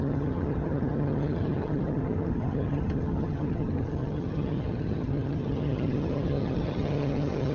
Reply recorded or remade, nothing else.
remade